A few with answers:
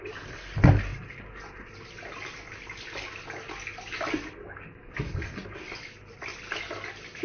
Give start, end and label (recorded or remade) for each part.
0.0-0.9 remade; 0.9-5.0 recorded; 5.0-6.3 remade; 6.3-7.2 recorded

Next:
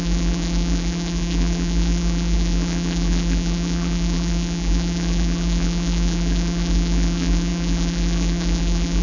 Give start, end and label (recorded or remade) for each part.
0.0-9.0 remade

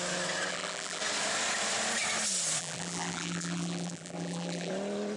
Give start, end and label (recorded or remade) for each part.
0.0-0.5 recorded; 0.5-1.0 remade; 1.0-2.6 recorded; 2.6-4.7 remade; 4.7-5.2 recorded

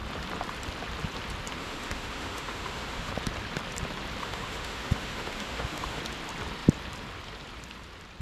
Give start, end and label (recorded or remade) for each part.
0.0-1.6 recorded; 1.6-3.1 remade; 3.1-4.2 recorded; 4.2-6.0 remade; 6.0-8.2 recorded

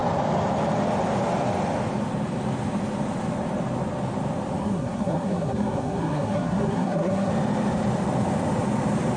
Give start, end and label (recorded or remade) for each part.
0.0-4.6 recorded; 4.6-7.3 remade; 7.3-9.2 recorded

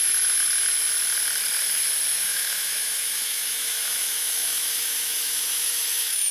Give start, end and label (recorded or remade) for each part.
0.0-2.1 recorded; 2.1-6.3 remade

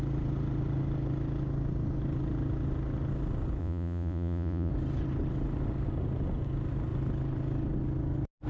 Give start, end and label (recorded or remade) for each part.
0.0-3.6 recorded; 3.6-4.7 remade; 4.7-8.5 recorded